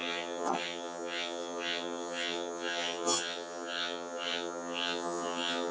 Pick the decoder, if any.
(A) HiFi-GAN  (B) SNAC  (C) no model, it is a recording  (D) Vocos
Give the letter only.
A